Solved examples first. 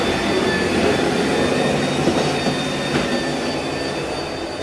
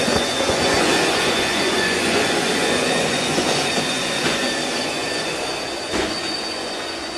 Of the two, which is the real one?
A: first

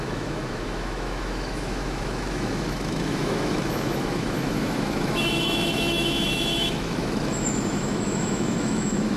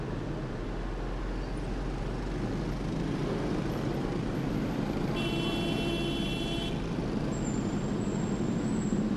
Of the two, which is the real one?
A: second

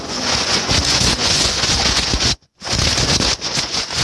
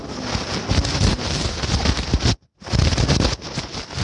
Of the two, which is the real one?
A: second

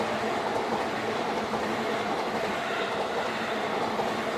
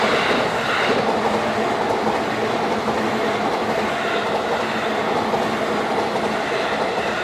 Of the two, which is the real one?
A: second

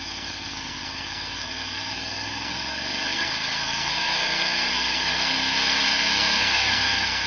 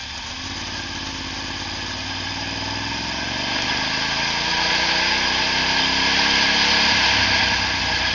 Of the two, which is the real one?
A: second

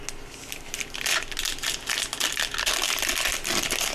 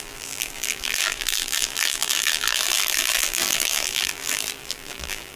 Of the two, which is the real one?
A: first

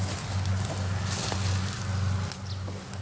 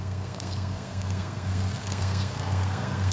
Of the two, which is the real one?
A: first